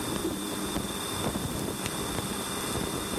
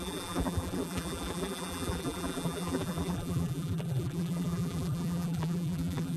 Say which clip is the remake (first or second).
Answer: second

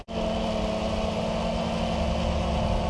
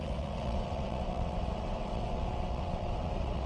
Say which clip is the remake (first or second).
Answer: second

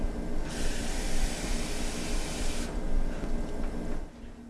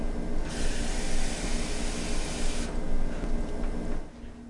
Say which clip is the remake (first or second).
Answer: first